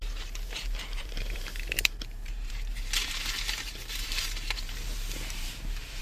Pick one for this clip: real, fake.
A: fake